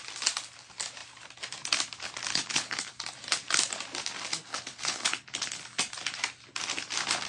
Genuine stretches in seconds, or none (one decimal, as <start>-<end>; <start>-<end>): 0.0-2.3; 2.9-4.5; 5.6-7.3